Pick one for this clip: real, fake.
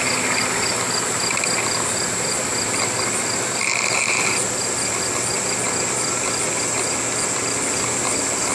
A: real